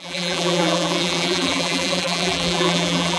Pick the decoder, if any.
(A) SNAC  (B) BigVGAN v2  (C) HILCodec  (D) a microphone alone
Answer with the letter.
B